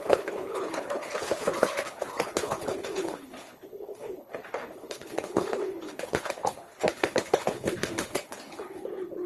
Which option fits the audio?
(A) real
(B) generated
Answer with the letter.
B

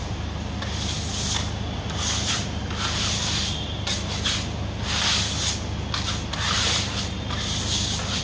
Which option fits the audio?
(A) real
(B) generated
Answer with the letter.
A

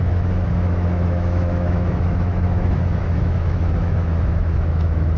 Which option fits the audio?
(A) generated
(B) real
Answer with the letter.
A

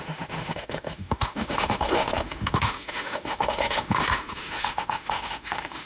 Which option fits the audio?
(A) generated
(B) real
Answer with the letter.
A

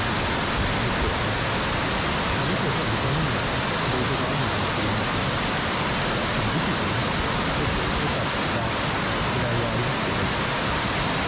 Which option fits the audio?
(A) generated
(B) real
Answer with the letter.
B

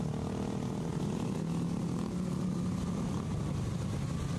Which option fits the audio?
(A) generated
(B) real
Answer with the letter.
B